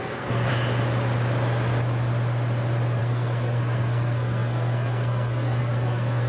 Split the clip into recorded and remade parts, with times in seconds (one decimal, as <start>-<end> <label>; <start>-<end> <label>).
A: 0.0-0.5 remade; 0.5-3.0 recorded; 3.0-6.3 remade